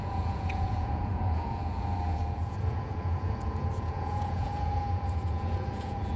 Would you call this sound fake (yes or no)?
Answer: yes